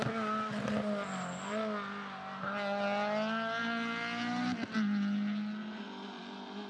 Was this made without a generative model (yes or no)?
yes